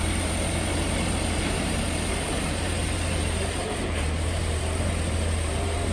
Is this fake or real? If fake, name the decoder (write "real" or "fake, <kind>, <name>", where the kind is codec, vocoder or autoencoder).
fake, vocoder, BigVGAN v2